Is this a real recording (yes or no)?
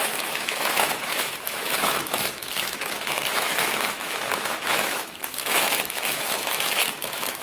no